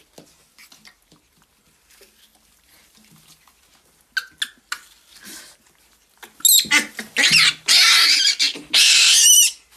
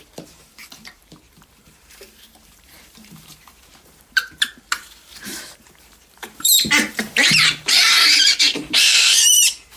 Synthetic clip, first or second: second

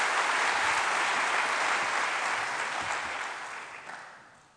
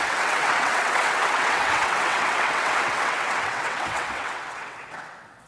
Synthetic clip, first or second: second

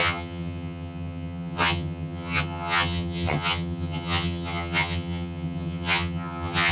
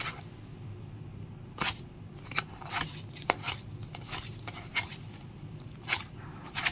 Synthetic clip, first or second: first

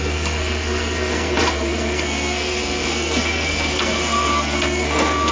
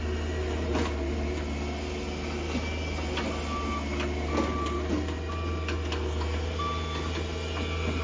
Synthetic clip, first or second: first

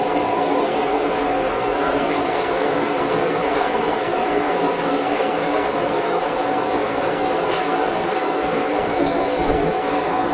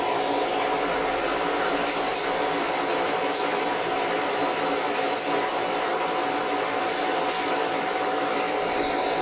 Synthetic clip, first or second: first